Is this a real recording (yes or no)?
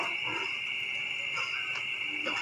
yes